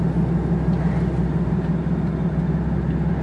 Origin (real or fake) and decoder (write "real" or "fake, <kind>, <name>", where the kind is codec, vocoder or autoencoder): real